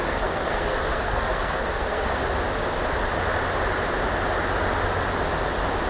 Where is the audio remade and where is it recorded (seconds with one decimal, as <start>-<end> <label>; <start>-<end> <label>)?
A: 0.0-2.2 remade; 2.2-5.9 recorded